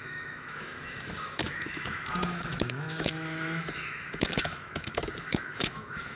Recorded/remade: remade